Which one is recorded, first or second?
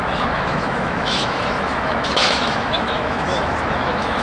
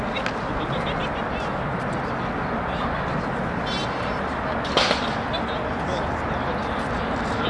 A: second